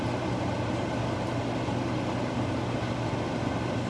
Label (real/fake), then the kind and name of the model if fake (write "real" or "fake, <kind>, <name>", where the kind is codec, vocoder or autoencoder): real